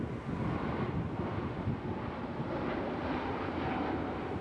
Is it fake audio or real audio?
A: real